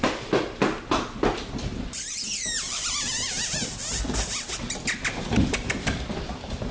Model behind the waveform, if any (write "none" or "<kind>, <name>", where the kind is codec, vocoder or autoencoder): vocoder, BigVGAN v2